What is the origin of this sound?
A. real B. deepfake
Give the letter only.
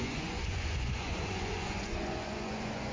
B